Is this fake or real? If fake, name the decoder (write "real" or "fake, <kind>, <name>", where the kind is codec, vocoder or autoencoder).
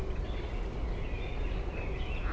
real